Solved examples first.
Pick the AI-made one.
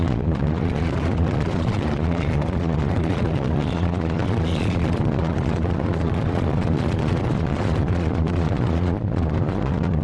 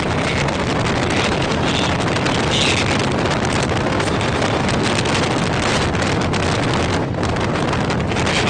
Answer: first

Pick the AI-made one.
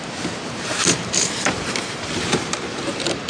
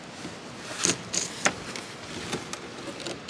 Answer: first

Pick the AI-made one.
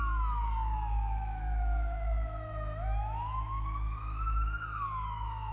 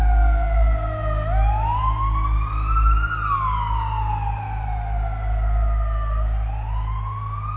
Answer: first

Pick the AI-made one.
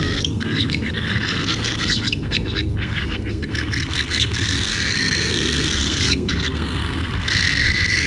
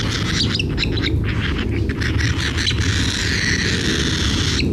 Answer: first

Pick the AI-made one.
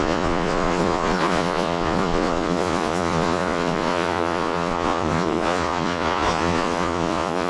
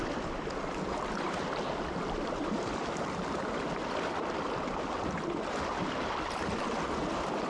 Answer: first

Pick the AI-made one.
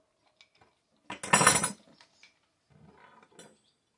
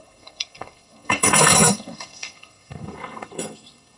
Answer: second